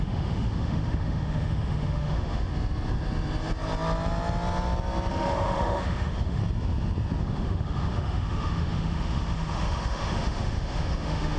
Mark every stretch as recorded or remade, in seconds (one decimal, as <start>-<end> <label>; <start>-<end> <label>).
0.0-2.5 remade; 2.5-5.1 recorded; 5.1-6.4 remade; 6.4-7.2 recorded; 7.2-11.4 remade